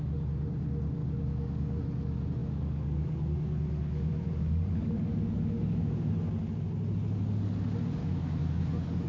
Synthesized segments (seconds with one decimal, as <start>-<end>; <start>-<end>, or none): 1.0-1.8; 2.4-6.1; 8.0-9.1